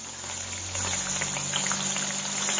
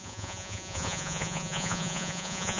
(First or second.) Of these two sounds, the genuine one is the first